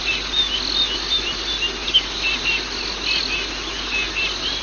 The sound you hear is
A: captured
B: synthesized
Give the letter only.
A